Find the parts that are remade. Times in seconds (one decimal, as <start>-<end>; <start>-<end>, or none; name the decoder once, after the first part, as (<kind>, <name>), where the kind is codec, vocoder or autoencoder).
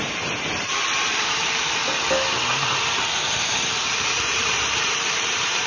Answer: 0.0-1.8 (vocoder, BigVGAN v2); 2.9-5.7